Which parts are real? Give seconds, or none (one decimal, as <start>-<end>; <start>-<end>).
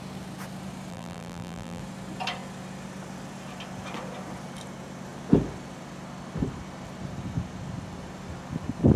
0.0-0.9; 1.8-9.0